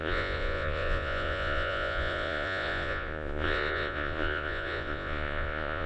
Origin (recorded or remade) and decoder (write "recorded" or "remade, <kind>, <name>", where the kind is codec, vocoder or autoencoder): remade, vocoder, Vocos